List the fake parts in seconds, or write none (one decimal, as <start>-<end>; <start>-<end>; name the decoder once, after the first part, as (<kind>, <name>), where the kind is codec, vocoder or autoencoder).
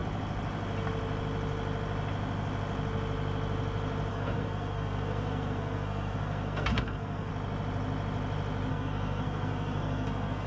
4.1-7.3 (codec, SNAC); 8.7-10.5